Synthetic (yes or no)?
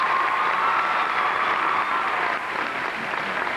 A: no